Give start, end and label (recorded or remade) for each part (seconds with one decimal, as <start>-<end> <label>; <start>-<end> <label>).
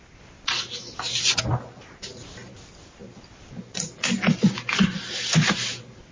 0.0-6.1 recorded